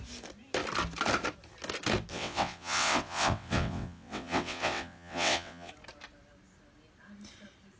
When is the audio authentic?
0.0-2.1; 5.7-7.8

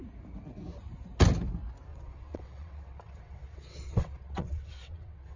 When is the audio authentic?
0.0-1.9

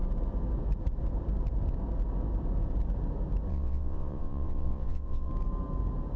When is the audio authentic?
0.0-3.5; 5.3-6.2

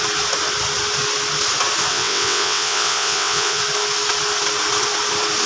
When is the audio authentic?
0.0-1.9; 3.6-5.5

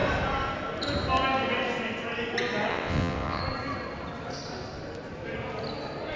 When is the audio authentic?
0.0-2.7; 3.4-6.2

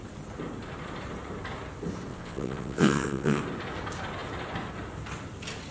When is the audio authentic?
0.0-2.1; 3.4-5.7

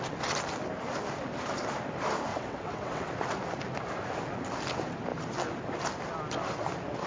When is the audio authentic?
0.0-2.3; 3.1-7.1